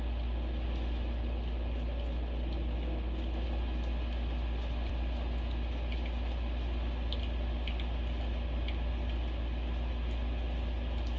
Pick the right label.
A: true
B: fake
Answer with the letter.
A